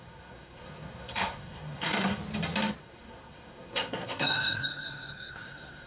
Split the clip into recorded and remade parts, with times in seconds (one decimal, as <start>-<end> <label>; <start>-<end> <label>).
0.0-2.2 remade; 2.2-2.8 recorded; 2.8-5.9 remade